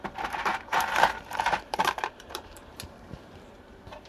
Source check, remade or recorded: remade